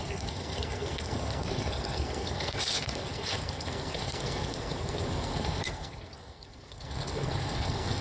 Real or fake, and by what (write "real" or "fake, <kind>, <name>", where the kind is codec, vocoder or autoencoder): fake, codec, SNAC